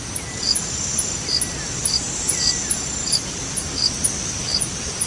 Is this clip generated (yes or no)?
no